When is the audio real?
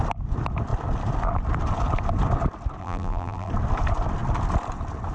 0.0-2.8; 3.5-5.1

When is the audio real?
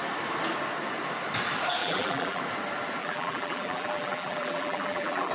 0.0-1.8; 2.4-3.0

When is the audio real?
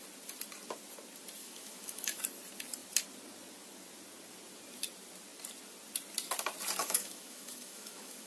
0.0-1.4; 2.2-6.8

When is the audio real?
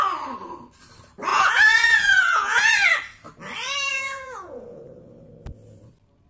0.0-1.3; 2.7-3.9; 4.8-6.3